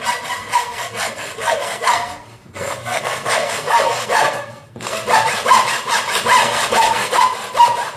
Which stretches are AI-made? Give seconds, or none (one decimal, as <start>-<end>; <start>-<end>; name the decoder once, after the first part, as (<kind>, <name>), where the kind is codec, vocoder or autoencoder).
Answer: 0.4-5.0 (codec, SNAC); 6.4-7.2